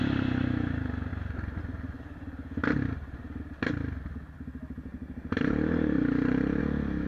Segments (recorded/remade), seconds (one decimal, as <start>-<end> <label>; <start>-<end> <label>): 0.0-4.9 recorded; 4.9-6.6 remade; 6.6-7.1 recorded